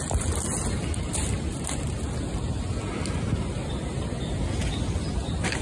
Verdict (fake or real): real